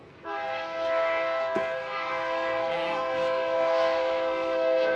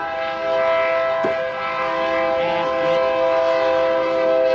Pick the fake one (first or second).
first